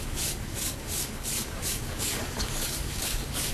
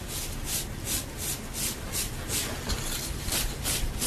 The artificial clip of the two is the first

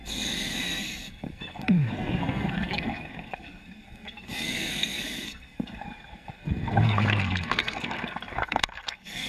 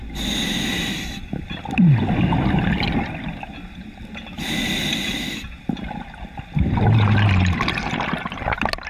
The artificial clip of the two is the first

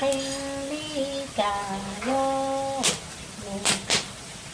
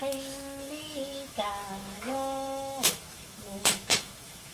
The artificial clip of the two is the second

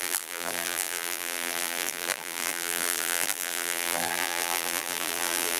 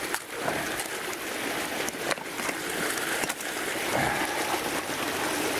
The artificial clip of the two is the first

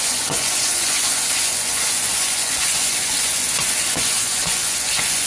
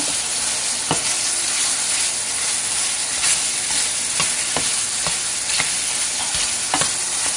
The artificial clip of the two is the first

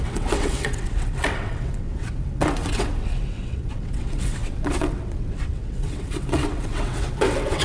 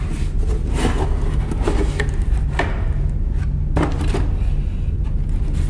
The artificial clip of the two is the first